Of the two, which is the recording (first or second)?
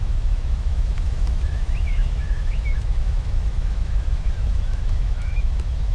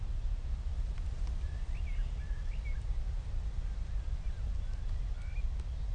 second